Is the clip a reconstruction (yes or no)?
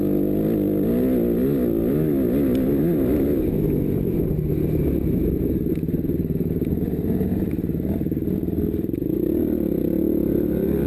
no